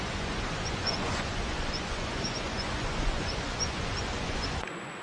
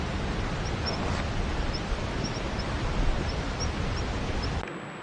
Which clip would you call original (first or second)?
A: second